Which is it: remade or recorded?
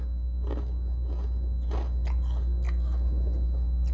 recorded